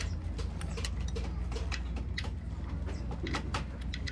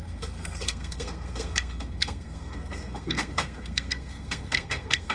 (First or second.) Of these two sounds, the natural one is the first